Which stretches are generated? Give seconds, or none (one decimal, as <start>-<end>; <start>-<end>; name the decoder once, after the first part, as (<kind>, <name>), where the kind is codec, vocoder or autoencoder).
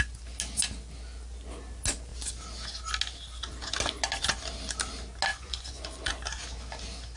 5.3-6.1 (vocoder, Vocos)